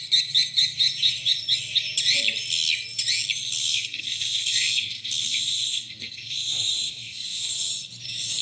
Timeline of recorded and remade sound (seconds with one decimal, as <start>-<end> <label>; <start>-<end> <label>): 0.0-3.6 recorded; 3.6-7.7 remade; 7.7-8.4 recorded